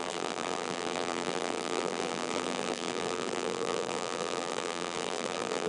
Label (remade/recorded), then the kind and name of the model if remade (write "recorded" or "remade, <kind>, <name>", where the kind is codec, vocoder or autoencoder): remade, vocoder, BigVGAN v2